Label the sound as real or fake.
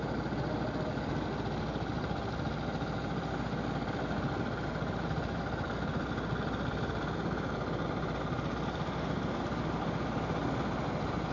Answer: real